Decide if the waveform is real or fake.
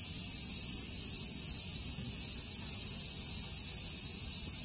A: real